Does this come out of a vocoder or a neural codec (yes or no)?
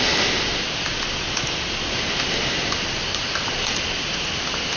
no